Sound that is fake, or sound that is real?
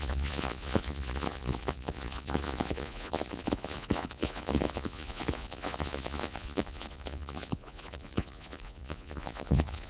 fake